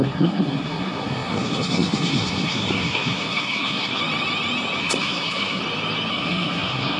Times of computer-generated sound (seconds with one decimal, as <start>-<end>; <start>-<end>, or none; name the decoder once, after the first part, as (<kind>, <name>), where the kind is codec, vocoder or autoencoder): 0.0-4.0 (codec, SNAC); 4.8-5.6; 6.1-7.0